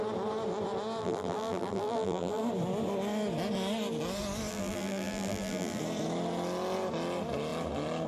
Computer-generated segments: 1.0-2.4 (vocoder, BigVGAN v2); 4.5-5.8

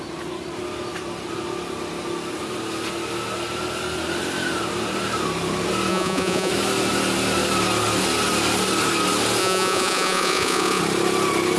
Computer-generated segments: 5.9-6.5 (vocoder, Vocos); 9.4-10.8

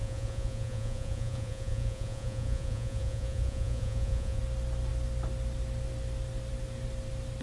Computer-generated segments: 0.0-4.4 (vocoder, Vocos)

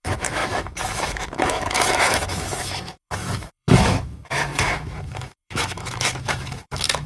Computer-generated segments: 0.0-7.1 (autoencoder, DAC-VAE)

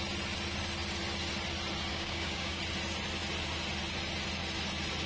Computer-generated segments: 1.9-2.6 (codec, DAC)

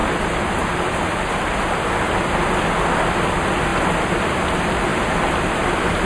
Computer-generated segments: 0.0-0.9 (vocoder, BigVGAN v2); 4.9-6.1

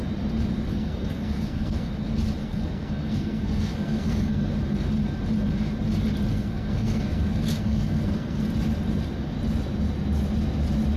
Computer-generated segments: 0.7-1.9 (codec, SNAC); 2.4-4.5; 6.3-8.5

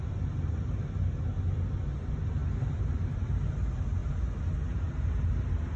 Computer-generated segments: none